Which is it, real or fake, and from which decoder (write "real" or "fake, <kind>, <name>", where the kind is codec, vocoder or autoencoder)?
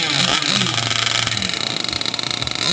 real